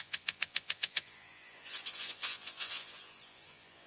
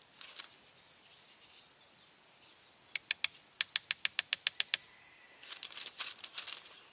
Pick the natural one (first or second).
second